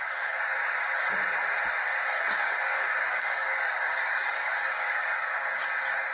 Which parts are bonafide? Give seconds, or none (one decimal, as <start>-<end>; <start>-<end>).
0.0-1.9; 5.6-6.1